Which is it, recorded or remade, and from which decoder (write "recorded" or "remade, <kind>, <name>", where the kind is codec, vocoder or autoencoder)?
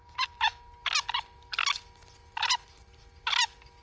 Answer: recorded